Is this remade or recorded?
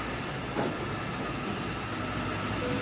recorded